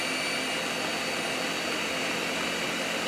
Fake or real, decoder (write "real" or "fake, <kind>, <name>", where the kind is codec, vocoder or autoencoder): real